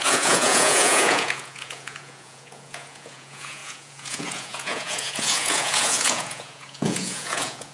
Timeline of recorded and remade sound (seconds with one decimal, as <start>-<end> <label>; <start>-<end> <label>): 0.0-7.7 remade